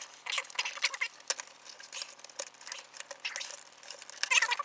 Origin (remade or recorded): recorded